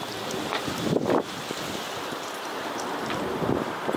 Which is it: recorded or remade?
recorded